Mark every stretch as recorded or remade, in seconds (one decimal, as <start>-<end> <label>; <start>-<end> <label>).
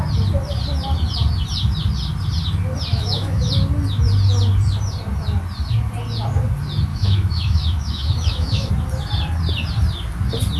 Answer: 0.0-2.9 recorded; 2.9-3.5 remade; 3.5-6.9 recorded; 6.9-8.7 remade; 8.7-10.6 recorded